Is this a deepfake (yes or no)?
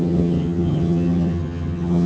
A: yes